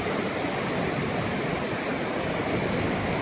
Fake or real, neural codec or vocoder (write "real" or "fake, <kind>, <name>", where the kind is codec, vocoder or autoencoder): real